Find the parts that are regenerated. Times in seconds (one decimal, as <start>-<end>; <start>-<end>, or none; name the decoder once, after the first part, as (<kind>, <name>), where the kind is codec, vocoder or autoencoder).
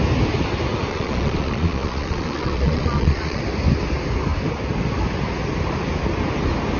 0.9-3.4 (vocoder, Vocos)